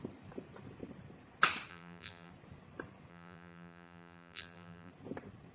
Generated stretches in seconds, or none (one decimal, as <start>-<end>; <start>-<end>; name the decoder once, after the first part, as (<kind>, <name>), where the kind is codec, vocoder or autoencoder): 1.7-2.3 (vocoder, BigVGAN v2); 3.1-4.9